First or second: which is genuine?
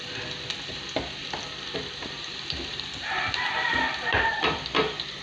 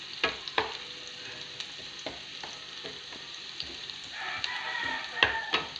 second